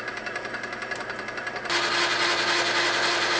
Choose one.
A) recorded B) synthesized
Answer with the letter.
A